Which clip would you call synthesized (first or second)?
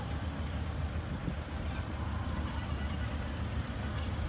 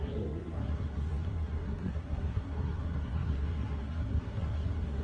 second